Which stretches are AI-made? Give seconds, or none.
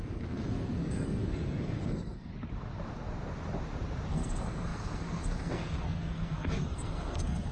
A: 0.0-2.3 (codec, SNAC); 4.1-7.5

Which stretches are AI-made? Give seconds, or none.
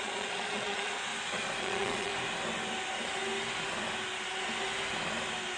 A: 0.0-1.1 (vocoder, Vocos); 1.6-2.1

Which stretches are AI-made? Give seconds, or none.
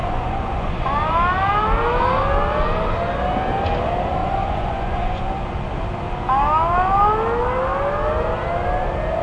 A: 0.0-0.9 (vocoder, Vocos); 4.2-5.2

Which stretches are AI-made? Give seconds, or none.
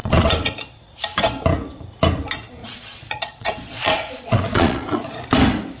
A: 0.0-1.0 (vocoder, Vocos); 2.6-5.2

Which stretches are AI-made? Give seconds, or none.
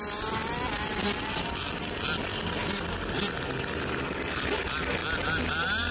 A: none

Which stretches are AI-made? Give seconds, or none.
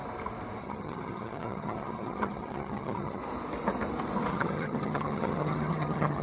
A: 0.6-3.2 (vocoder, HiFi-GAN); 4.3-6.2